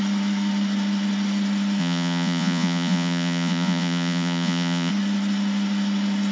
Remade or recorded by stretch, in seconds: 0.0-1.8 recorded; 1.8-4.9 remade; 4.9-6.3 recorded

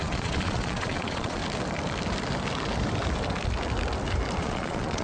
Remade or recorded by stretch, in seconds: 0.0-1.4 remade; 1.4-4.4 recorded; 4.4-5.0 remade

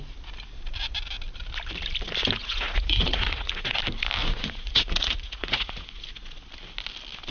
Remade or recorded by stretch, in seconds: 0.0-2.4 recorded; 2.4-3.8 remade; 3.8-4.2 recorded; 4.2-6.0 remade; 6.0-7.3 recorded

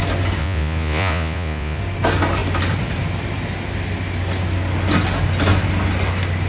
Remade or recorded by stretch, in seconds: 0.0-0.4 recorded; 0.4-1.8 remade; 1.8-6.5 recorded

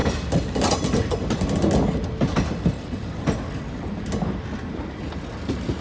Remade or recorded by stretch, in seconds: 0.0-5.8 recorded

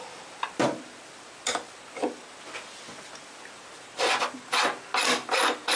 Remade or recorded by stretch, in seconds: 0.0-5.8 recorded